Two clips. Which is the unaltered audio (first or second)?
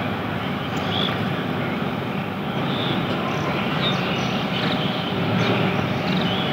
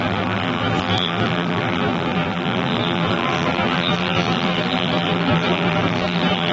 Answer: first